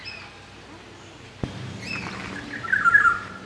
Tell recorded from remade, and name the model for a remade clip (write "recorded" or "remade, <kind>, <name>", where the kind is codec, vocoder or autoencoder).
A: recorded